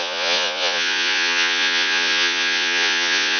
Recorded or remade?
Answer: remade